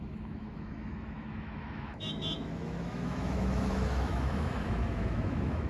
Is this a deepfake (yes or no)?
yes